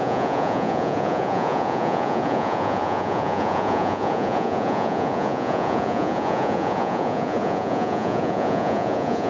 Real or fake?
fake